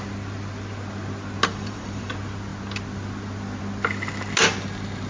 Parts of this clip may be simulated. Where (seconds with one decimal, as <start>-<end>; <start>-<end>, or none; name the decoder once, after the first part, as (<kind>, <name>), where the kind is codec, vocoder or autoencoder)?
1.5-2.1 (vocoder, BigVGAN v2)